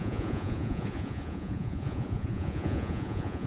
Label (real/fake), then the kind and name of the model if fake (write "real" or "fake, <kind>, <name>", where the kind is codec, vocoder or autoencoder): fake, vocoder, Vocos